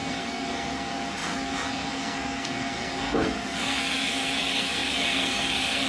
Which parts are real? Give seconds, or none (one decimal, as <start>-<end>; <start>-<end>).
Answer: none